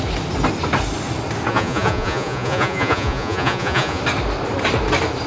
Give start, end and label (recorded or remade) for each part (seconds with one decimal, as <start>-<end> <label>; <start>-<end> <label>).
0.0-1.5 recorded; 1.5-4.0 remade; 4.0-5.3 recorded